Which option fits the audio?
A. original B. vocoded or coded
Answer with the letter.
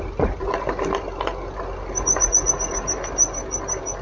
A